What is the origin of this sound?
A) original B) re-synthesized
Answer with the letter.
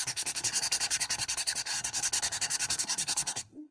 B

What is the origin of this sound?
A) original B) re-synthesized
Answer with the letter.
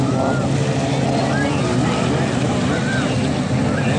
A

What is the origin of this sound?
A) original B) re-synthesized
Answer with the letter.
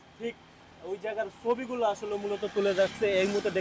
A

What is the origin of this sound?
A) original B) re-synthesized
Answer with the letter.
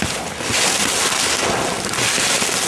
A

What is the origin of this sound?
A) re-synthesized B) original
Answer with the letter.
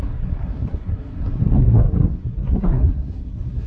A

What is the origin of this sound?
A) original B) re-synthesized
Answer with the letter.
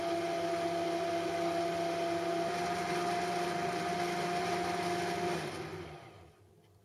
A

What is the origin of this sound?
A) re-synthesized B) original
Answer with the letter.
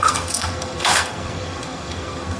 A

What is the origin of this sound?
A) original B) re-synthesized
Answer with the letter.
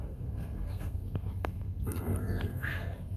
B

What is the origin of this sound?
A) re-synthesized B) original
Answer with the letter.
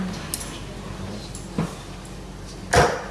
B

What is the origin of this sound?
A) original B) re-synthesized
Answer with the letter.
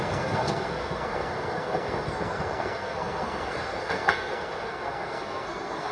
B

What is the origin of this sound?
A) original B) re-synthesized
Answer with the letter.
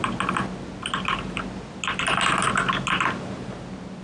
A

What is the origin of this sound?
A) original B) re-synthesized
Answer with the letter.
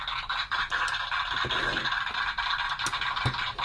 A